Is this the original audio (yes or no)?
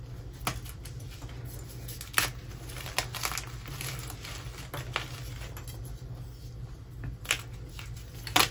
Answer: yes